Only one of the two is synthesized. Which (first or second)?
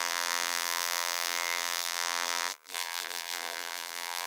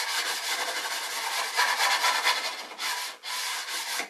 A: first